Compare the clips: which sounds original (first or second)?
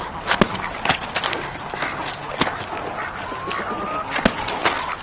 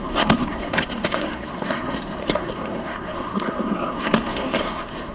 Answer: first